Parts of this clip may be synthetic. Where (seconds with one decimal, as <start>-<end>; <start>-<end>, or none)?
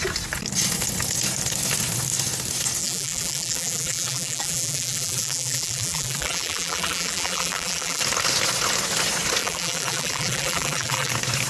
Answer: 2.8-8.0; 9.4-11.1